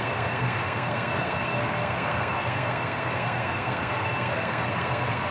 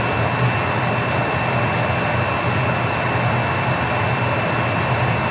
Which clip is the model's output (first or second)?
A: first